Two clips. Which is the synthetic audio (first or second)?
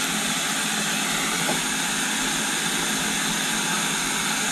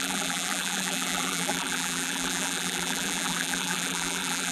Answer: second